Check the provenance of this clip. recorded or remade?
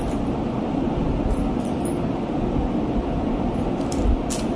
recorded